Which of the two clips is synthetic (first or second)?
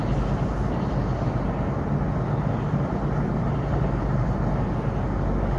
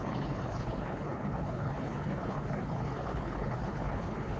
second